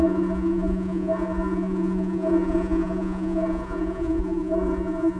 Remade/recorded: remade